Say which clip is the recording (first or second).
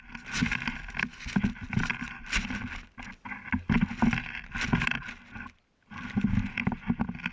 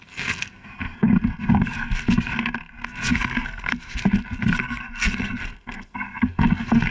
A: first